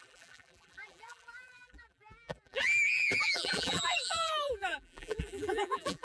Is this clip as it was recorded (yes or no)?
no